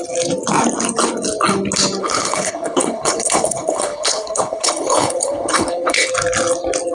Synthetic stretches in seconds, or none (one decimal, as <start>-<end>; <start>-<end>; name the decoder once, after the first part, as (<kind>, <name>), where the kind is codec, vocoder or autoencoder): 2.0-6.1 (codec, HILCodec)